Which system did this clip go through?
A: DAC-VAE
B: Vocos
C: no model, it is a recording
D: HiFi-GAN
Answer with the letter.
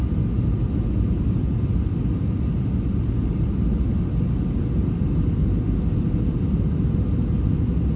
C